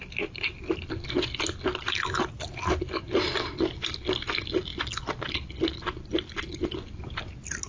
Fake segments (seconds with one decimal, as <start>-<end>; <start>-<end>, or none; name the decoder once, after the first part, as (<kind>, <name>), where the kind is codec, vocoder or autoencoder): none